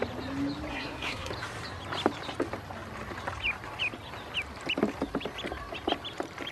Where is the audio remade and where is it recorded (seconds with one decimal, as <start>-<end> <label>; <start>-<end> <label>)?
0.0-0.7 recorded; 0.7-1.3 remade; 1.3-6.5 recorded